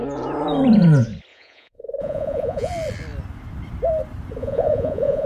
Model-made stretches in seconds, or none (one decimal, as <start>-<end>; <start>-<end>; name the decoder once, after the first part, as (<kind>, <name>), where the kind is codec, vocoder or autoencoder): 1.3-2.7 (vocoder, Vocos); 4.4-5.3